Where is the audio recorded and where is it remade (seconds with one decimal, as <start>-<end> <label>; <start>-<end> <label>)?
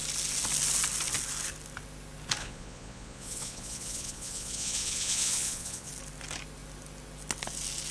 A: 0.0-2.4 recorded; 2.4-5.9 remade; 5.9-7.9 recorded